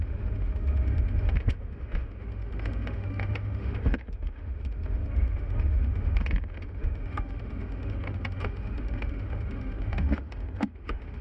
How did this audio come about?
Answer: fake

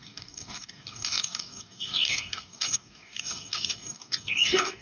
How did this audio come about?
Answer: fake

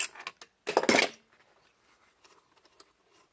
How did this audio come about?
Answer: real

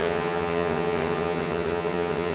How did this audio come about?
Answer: fake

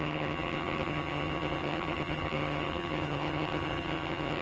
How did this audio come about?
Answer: fake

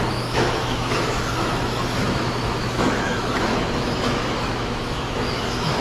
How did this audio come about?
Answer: fake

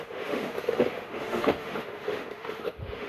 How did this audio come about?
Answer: fake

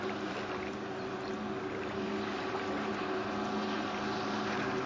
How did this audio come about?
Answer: real